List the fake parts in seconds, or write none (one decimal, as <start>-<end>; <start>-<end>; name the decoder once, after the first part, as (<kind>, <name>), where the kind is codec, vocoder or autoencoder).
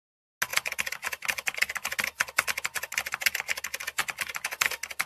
none